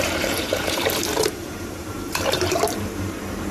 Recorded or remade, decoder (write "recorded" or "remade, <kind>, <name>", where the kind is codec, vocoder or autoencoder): remade, vocoder, BigVGAN v2